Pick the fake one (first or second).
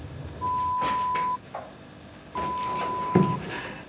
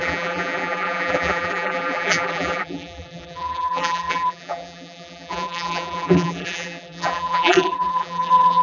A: second